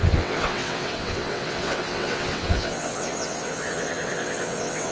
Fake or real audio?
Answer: fake